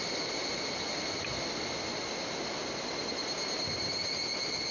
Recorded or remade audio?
recorded